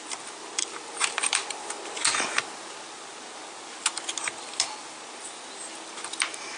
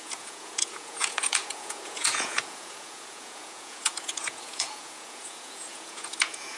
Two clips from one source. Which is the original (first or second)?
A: first